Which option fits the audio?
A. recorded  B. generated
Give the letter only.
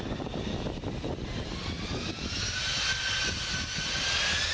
A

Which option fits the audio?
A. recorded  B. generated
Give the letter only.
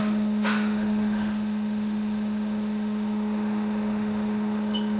B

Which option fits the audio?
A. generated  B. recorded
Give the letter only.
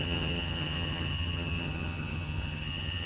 A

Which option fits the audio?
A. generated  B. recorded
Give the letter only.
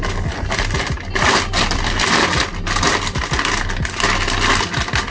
B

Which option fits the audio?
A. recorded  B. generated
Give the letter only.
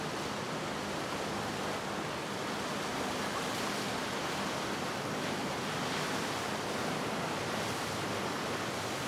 A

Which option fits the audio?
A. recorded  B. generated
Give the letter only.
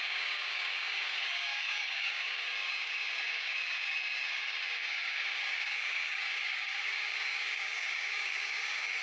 B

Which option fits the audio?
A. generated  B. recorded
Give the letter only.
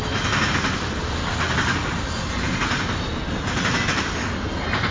B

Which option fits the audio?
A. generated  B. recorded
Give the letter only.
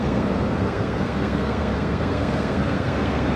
A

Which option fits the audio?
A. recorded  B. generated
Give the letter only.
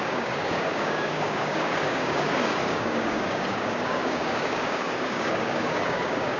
B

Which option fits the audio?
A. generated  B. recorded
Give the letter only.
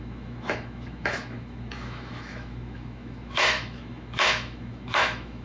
A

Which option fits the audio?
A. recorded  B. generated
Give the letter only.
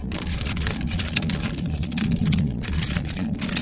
B